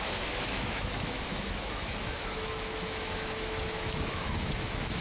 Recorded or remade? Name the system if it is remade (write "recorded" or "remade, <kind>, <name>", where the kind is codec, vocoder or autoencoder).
remade, autoencoder, DAC-VAE